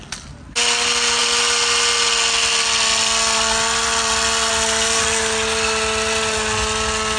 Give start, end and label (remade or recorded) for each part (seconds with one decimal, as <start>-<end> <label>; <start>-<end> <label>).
0.0-7.2 recorded